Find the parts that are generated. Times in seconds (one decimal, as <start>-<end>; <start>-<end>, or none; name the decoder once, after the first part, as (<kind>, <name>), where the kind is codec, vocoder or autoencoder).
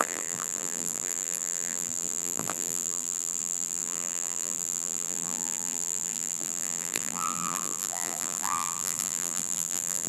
0.0-10.1 (vocoder, BigVGAN v2)